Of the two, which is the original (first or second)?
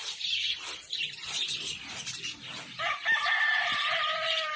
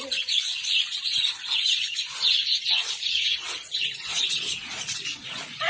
first